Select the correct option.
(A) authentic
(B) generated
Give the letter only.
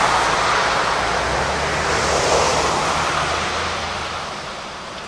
A